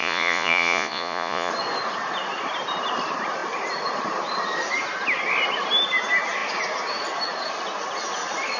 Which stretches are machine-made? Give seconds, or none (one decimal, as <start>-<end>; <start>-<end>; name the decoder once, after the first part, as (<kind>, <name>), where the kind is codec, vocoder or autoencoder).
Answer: 0.0-1.5 (vocoder, Vocos)